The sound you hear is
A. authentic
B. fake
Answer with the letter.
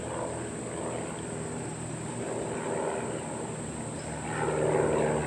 A